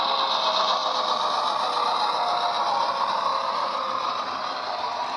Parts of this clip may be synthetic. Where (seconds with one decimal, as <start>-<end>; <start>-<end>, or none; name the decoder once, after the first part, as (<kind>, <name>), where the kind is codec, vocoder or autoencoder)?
none